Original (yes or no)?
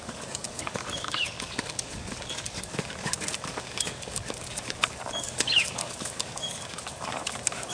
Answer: no